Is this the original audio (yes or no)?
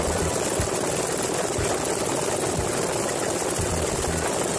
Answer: yes